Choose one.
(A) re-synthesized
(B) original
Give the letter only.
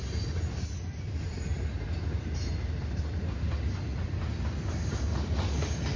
B